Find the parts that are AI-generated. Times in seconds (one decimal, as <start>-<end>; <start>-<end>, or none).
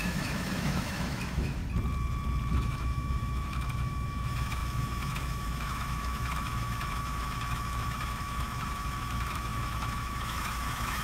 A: 0.0-1.6; 2.5-11.0